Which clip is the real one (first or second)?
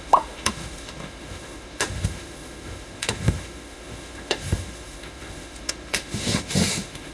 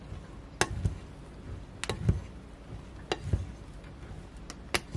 second